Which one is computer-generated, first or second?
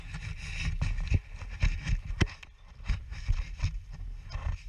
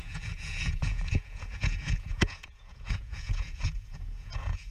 second